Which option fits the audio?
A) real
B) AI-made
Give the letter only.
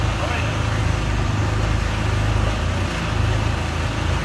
A